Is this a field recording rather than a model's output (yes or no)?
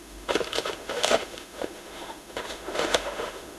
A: no